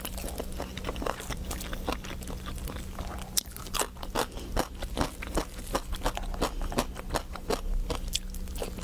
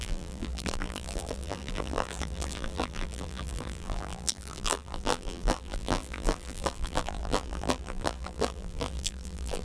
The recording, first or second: first